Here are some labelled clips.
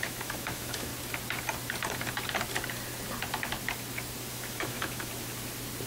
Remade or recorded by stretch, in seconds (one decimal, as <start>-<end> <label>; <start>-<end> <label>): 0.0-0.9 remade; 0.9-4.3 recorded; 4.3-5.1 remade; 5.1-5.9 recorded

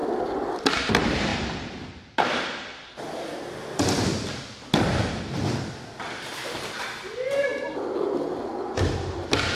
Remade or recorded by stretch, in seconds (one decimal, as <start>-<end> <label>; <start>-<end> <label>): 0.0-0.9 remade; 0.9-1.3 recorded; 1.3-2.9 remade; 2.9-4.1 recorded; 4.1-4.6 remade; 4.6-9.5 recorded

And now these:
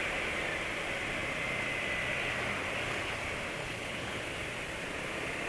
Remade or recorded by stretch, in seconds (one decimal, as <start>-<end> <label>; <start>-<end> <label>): 0.0-3.6 recorded; 3.6-4.2 remade; 4.2-5.5 recorded

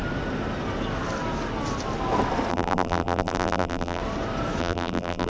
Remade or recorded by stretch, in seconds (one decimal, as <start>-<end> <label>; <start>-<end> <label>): 0.0-2.5 recorded; 2.5-4.0 remade; 4.0-4.6 recorded; 4.6-5.3 remade

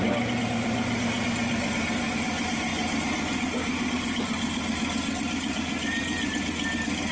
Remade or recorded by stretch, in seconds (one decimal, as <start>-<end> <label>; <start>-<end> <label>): 0.0-7.1 recorded

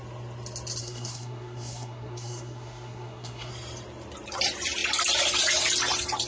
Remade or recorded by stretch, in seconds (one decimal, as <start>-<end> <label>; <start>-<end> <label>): 0.0-0.8 recorded; 0.8-3.5 remade; 3.5-6.3 recorded